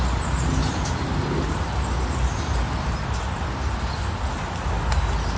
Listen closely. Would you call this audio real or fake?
real